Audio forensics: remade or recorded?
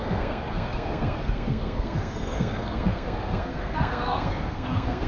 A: remade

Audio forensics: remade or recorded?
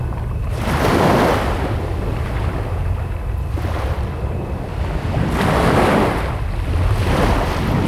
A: recorded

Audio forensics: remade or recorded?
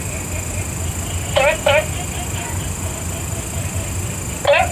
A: recorded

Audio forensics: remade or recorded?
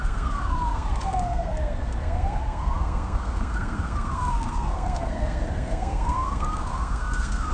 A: remade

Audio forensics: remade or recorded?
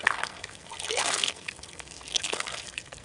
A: remade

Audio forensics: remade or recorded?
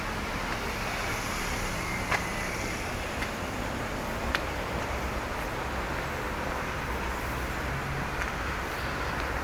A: recorded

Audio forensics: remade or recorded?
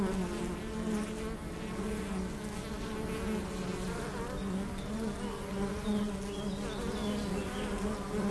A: recorded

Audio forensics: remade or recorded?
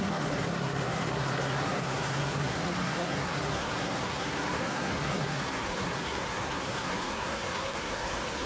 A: remade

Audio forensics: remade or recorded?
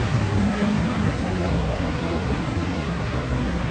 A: remade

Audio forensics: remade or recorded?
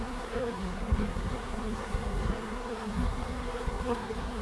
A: remade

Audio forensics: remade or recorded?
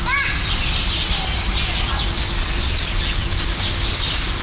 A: recorded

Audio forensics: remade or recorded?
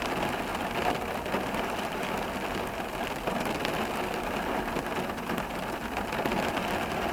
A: recorded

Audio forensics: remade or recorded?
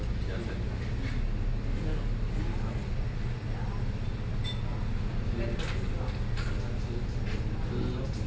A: recorded